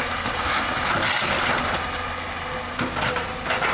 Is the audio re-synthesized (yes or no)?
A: no